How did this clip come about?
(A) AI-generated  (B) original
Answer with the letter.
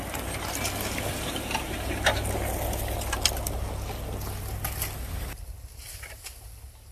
B